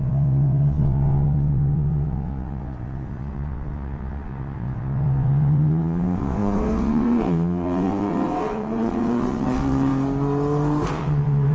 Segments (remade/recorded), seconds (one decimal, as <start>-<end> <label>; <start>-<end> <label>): 0.0-9.9 remade; 9.9-10.9 recorded; 10.9-11.5 remade